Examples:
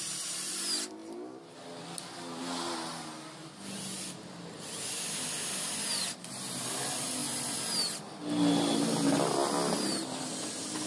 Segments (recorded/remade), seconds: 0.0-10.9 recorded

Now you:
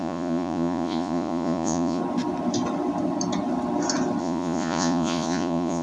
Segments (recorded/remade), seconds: 0.0-2.0 remade; 2.0-4.2 recorded; 4.2-5.8 remade

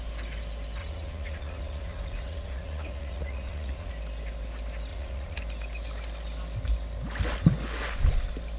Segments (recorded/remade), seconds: 0.0-0.8 recorded; 0.8-3.9 remade; 3.9-4.9 recorded; 4.9-5.4 remade; 5.4-8.6 recorded

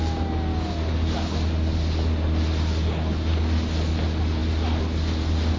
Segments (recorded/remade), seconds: 0.0-5.6 recorded